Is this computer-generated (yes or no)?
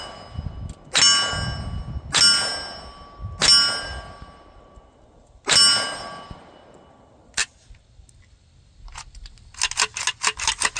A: no